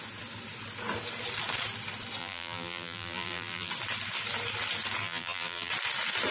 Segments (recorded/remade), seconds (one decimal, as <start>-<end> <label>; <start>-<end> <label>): 0.0-2.2 recorded; 2.2-3.7 remade; 3.7-5.0 recorded; 5.0-5.7 remade; 5.7-6.3 recorded